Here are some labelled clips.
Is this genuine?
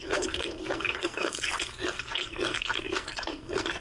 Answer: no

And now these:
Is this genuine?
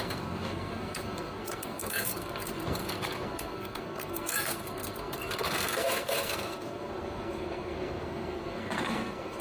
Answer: no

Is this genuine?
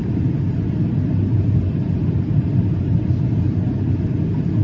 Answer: yes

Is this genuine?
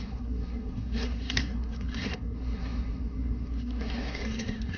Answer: no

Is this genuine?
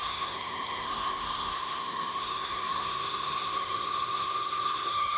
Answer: no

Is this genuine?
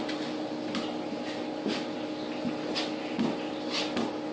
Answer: yes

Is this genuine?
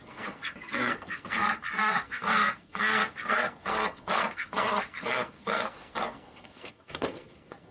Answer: no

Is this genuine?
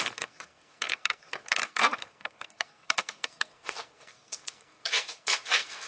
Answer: no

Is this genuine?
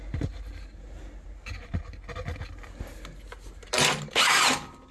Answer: yes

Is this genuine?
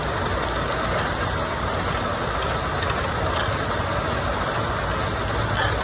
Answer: yes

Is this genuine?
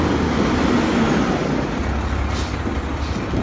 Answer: yes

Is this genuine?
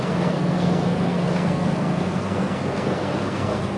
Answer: no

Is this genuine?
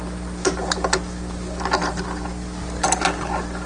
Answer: yes